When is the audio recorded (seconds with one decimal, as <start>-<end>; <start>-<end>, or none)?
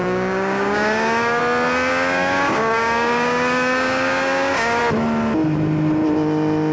1.4-1.9; 4.8-6.7